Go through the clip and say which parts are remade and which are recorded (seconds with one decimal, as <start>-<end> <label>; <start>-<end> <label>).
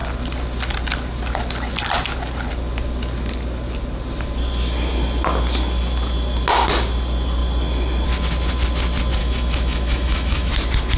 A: 0.0-9.2 recorded; 9.2-10.5 remade; 10.5-11.0 recorded